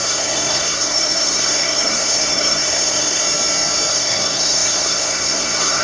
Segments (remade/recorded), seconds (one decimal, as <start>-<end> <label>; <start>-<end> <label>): 0.0-3.2 remade; 3.2-3.9 recorded; 3.9-5.8 remade